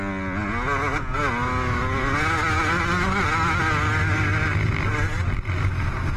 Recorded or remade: recorded